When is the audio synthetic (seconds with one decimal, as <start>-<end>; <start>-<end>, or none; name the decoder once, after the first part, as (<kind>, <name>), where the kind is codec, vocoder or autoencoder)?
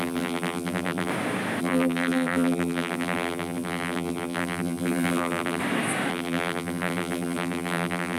0.0-1.1 (vocoder, BigVGAN v2); 1.6-5.6; 6.1-8.2